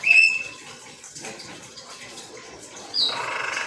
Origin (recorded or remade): remade